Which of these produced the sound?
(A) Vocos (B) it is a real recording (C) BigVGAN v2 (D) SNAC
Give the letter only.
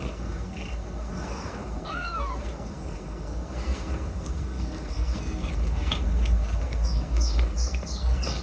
D